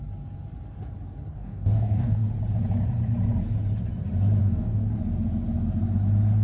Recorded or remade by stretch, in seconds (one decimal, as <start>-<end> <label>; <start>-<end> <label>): 0.0-1.3 recorded; 1.3-2.3 remade; 2.3-4.4 recorded; 4.4-5.0 remade; 5.0-6.4 recorded